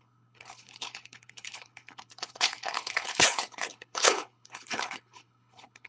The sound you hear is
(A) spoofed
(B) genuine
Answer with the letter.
A